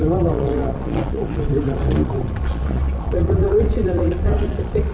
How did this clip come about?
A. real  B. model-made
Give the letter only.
B